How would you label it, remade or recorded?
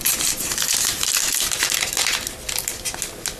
recorded